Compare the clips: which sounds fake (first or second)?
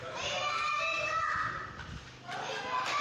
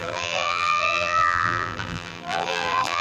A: second